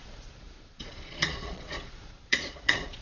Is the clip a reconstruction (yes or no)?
yes